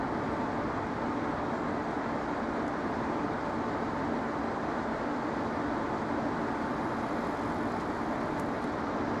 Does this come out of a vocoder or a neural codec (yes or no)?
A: no